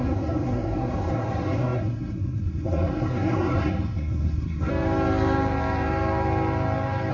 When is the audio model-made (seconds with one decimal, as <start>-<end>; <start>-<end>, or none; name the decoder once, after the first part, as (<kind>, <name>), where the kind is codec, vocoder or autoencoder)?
0.0-4.7 (codec, SNAC)